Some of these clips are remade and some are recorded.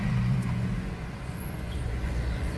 remade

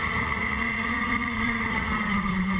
remade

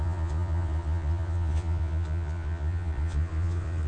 remade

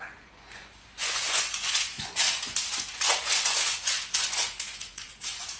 remade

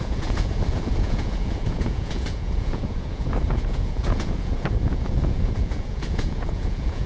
remade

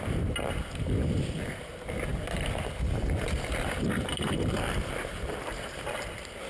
recorded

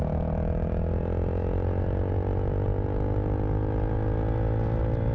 recorded